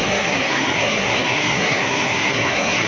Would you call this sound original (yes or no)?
no